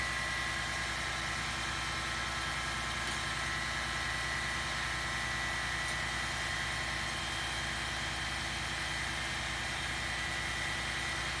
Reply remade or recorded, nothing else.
recorded